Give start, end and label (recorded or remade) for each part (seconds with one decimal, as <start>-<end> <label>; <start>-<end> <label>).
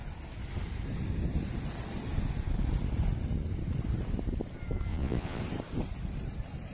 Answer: 0.0-4.9 recorded; 4.9-5.4 remade; 5.4-6.7 recorded